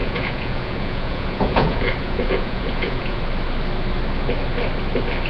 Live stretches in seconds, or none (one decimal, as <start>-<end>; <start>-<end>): 3.2-5.3